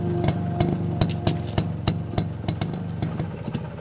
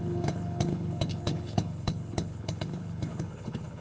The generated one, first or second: second